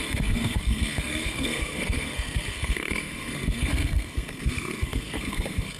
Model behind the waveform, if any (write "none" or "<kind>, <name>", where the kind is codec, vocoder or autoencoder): codec, SNAC